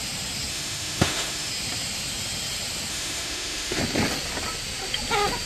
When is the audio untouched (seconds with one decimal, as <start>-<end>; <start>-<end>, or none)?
0.0-0.5; 1.5-2.9; 3.8-5.5